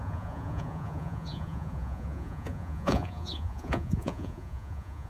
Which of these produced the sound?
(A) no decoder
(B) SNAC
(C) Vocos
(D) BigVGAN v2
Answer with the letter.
C